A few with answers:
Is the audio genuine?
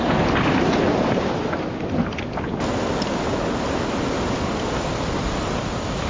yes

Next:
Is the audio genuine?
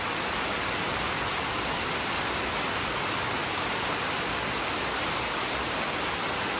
yes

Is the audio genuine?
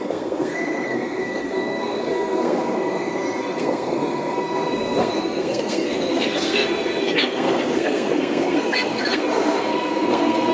no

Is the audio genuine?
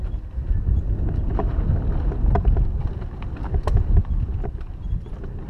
yes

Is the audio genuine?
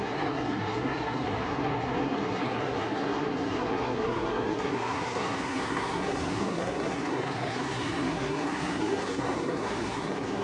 no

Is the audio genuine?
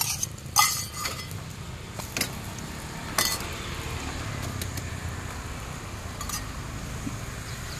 yes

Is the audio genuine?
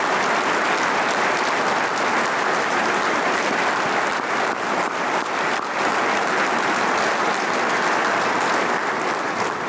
yes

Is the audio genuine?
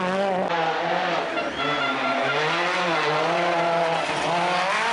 yes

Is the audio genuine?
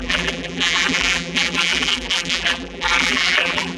no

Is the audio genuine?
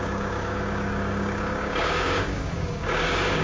no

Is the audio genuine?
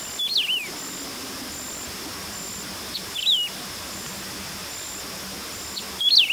yes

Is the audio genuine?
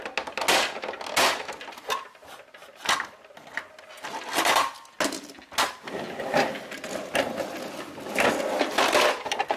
yes